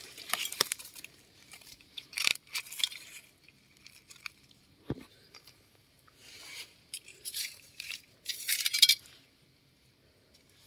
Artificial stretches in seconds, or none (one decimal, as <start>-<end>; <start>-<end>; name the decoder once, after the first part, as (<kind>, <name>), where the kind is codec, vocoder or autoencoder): 0.0-2.3 (vocoder, BigVGAN v2); 4.3-10.7